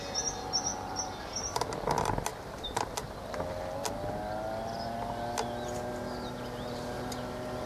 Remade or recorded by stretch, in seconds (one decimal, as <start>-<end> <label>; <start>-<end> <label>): 0.0-7.7 recorded